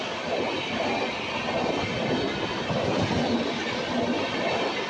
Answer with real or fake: real